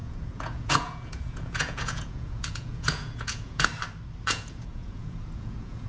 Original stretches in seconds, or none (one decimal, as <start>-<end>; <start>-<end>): 3.7-4.2